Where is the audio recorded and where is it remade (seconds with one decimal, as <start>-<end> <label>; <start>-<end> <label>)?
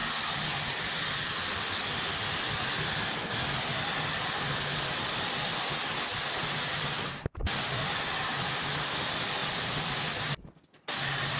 0.0-11.4 recorded